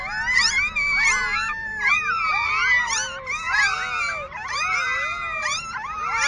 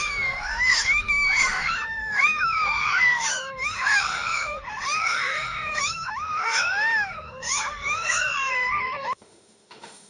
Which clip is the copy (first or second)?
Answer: second